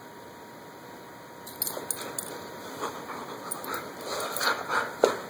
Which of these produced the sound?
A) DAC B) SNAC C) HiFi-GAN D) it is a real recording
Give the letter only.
D